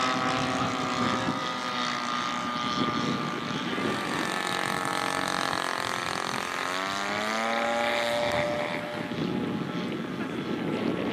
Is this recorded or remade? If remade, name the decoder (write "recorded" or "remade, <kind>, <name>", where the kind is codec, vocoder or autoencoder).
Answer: recorded